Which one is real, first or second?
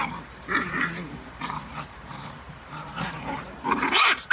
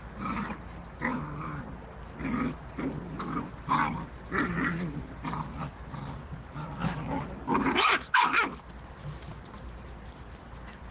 second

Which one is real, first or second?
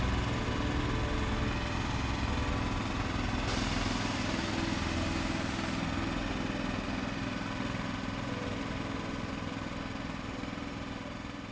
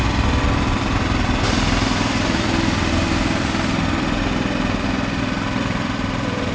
first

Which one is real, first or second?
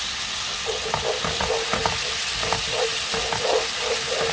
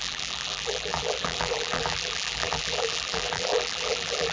first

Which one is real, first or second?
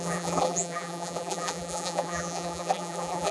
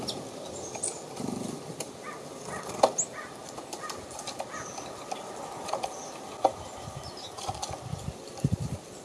second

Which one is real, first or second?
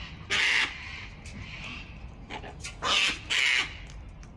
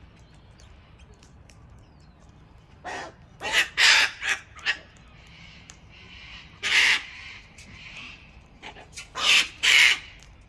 first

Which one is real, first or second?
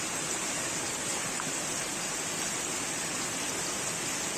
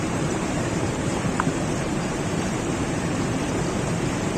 first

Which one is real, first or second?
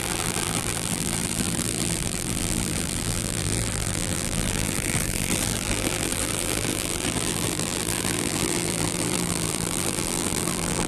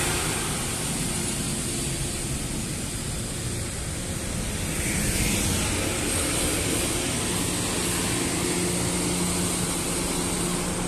second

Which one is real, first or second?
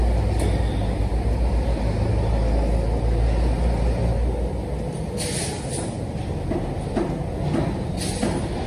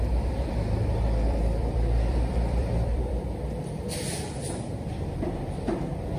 first